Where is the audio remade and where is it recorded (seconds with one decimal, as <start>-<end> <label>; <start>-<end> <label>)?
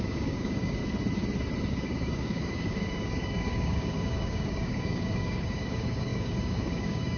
0.0-0.8 remade; 0.8-1.7 recorded; 1.7-7.2 remade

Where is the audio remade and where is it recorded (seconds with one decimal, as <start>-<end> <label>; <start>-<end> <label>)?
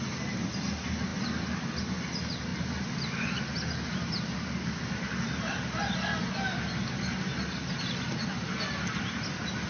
0.0-9.7 recorded